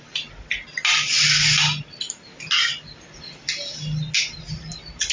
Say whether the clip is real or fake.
real